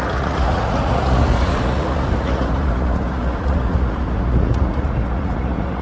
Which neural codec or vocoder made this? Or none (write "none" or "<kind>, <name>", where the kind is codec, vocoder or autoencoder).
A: vocoder, Vocos